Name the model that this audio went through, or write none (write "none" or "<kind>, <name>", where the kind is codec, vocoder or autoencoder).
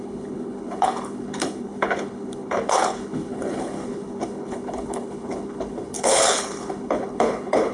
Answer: codec, HILCodec